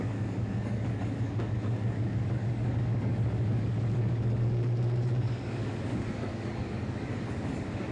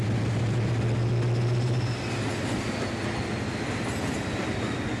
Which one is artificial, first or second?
first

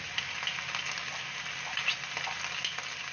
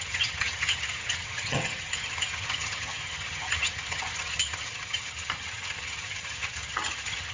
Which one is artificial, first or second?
second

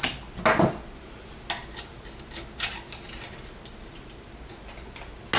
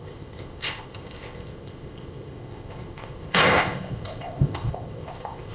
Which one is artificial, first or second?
second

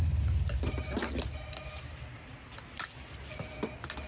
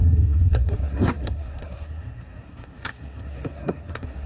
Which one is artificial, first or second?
second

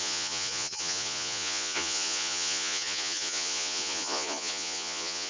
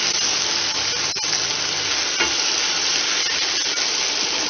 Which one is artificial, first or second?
first